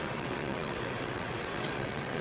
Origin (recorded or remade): remade